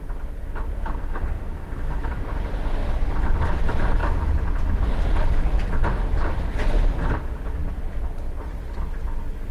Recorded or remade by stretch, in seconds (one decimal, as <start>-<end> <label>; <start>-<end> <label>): 0.0-0.7 recorded; 0.7-2.2 remade; 2.2-9.5 recorded